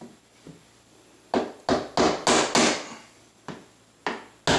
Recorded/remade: recorded